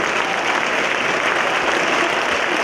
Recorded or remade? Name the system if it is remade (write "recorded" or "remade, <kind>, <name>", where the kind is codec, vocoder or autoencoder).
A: recorded